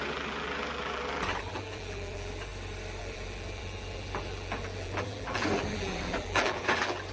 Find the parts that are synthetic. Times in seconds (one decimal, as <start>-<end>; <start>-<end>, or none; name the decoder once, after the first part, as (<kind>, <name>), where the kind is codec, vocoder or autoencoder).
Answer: 0.0-2.5 (vocoder, BigVGAN v2); 3.0-7.1